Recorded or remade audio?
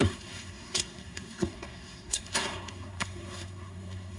remade